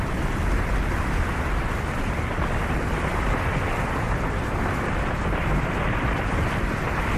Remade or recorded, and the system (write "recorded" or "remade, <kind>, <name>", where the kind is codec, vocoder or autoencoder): remade, vocoder, BigVGAN v2